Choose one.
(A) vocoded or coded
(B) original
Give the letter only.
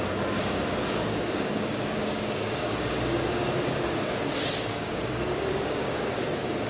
A